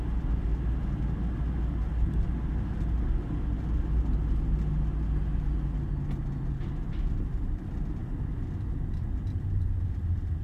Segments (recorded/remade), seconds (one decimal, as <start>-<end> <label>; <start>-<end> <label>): 0.0-10.4 recorded